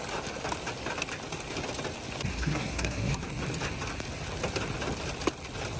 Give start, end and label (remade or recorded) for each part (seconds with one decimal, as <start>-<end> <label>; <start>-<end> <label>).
0.0-2.3 recorded; 2.3-3.3 remade; 3.3-5.8 recorded